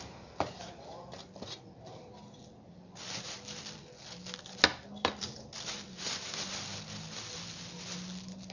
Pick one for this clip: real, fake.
real